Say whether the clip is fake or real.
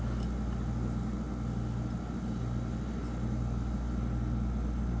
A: real